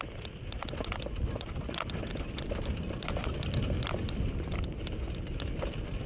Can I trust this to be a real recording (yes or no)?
yes